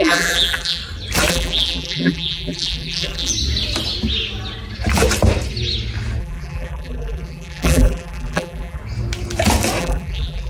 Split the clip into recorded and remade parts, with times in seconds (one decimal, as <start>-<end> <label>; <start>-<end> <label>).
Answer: 0.0-0.8 remade; 0.8-1.3 recorded; 1.3-3.3 remade; 3.3-6.2 recorded; 6.2-8.8 remade; 8.8-9.8 recorded; 9.8-10.5 remade